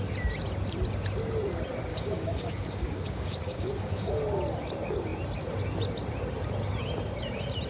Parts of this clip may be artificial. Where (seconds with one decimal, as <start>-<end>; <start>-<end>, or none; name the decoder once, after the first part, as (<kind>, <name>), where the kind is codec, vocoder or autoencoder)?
1.9-4.1 (codec, DAC)